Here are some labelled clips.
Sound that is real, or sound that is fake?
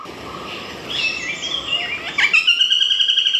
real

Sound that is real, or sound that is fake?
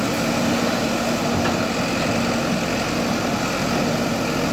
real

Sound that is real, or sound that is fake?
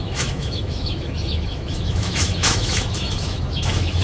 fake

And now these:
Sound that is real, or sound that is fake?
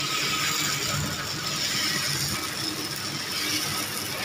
real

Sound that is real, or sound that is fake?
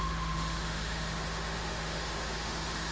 fake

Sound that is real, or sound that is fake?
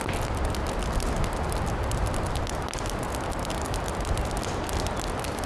real